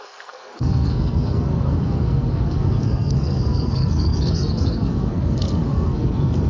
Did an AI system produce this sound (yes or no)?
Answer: yes